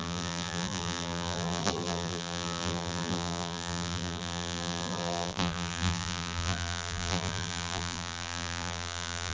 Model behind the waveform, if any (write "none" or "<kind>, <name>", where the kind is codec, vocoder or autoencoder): vocoder, BigVGAN v2